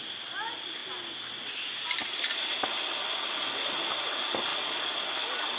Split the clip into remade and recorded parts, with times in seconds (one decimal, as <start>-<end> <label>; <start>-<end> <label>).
0.0-5.6 recorded